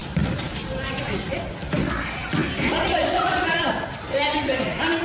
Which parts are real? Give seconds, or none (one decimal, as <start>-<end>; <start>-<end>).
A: 0.0-2.9; 3.6-5.0